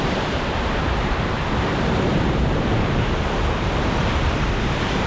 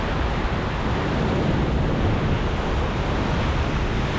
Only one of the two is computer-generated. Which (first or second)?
first